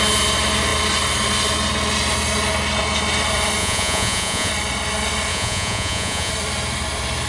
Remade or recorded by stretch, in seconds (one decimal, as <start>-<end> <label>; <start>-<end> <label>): 0.0-3.6 recorded; 3.6-4.5 remade; 4.5-5.3 recorded; 5.3-6.3 remade; 6.3-7.3 recorded

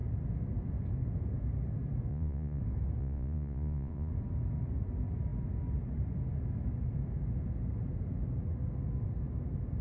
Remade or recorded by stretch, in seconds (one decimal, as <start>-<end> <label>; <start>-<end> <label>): 0.0-2.1 recorded; 2.1-2.6 remade; 2.6-3.0 recorded; 3.0-4.1 remade; 4.1-9.8 recorded